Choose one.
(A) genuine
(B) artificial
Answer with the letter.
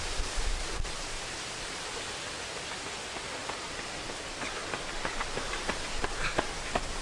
A